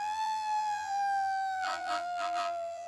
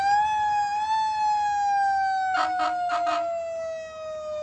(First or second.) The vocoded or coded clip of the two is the first